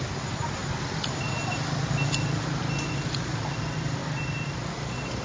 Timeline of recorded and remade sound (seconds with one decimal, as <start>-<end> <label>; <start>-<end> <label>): 0.0-5.2 recorded